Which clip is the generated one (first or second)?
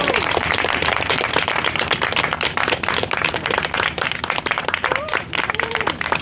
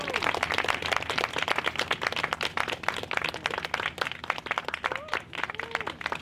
first